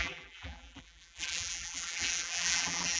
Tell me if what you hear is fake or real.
fake